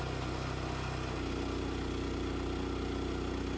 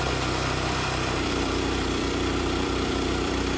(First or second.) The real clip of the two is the first